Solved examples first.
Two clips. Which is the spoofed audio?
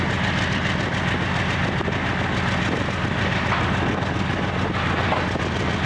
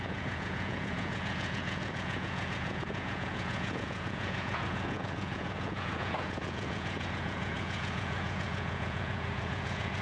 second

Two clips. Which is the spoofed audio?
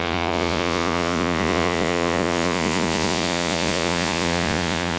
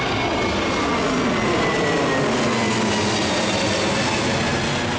first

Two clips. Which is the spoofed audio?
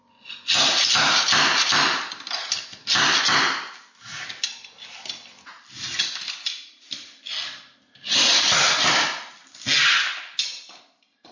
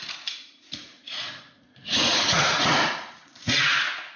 second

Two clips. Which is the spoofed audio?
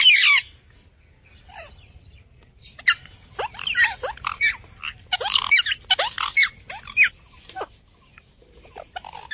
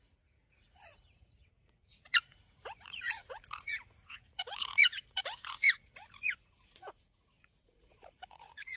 second